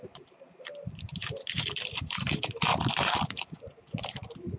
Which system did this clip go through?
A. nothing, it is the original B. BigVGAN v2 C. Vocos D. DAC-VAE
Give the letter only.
B